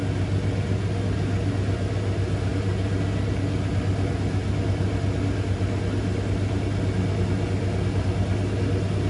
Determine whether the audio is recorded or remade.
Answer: recorded